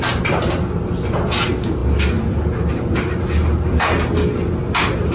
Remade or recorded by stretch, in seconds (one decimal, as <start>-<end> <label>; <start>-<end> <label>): 0.0-5.1 recorded

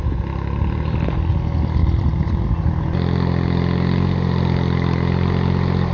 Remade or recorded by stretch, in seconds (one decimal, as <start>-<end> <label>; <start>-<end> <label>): 0.0-5.9 recorded

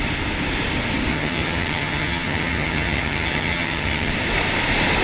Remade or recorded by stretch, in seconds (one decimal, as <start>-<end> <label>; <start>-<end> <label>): 0.0-1.1 recorded; 1.1-4.1 remade; 4.1-5.0 recorded

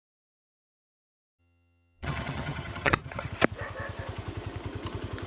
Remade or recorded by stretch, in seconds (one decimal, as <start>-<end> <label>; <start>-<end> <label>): 0.0-1.4 recorded; 1.4-3.3 remade; 3.3-5.3 recorded

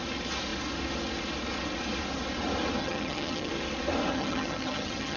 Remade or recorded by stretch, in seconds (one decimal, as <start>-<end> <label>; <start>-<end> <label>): 0.0-2.8 recorded; 2.8-3.5 remade; 3.5-4.1 recorded; 4.1-5.2 remade

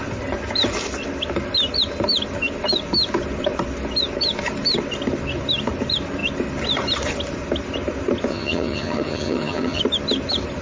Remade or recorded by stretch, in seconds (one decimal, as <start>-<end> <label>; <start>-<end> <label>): 0.0-8.3 recorded; 8.3-9.8 remade; 9.8-10.6 recorded

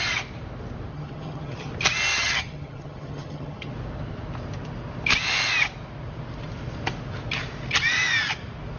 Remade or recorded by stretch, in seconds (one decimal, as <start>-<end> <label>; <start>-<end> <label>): 0.0-0.9 recorded; 0.9-1.7 remade; 1.7-2.1 recorded; 2.1-3.7 remade; 3.7-8.8 recorded

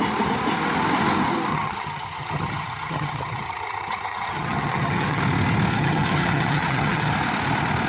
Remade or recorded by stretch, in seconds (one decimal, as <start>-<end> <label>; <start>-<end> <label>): 0.0-1.5 recorded; 1.5-5.2 remade; 5.2-5.7 recorded; 5.7-7.1 remade; 7.1-7.9 recorded